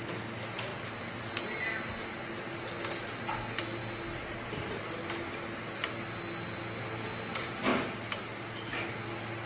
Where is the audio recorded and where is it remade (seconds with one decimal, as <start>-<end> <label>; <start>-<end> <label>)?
0.0-9.5 recorded